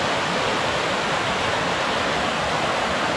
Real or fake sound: real